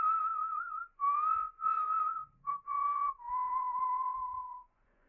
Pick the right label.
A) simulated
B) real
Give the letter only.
A